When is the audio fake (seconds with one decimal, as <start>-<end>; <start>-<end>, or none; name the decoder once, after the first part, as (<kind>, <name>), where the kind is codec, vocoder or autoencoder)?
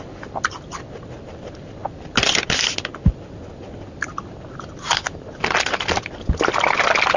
none